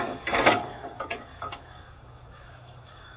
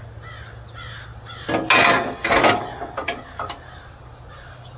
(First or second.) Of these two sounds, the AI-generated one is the first